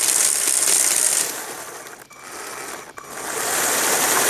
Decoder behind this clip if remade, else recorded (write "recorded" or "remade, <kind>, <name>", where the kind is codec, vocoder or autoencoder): recorded